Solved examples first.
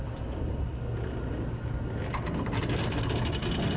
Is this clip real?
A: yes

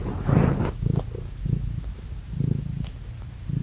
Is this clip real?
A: yes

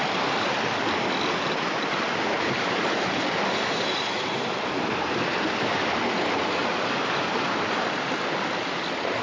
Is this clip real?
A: yes